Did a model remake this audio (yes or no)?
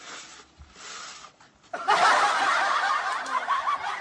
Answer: no